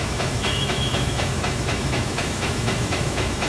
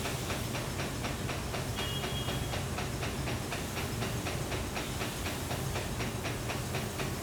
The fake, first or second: first